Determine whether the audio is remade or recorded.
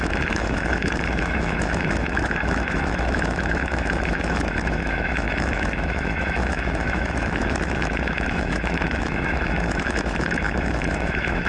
remade